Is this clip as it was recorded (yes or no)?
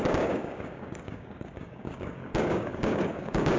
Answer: no